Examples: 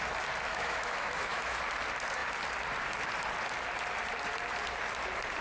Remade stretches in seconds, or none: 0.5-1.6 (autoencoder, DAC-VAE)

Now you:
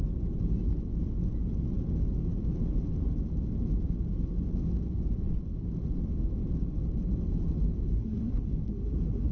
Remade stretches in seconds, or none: 7.9-9.3 (codec, SNAC)

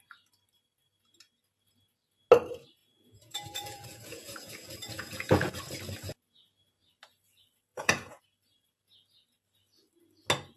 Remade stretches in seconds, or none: 2.8-5.6 (vocoder, Vocos); 7.7-8.2

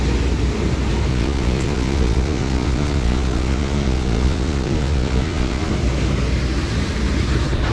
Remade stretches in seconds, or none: 1.1-5.7 (vocoder, Vocos)

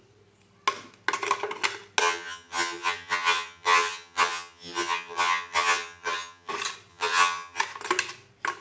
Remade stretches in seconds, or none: 2.0-6.5 (vocoder, HiFi-GAN); 6.9-7.6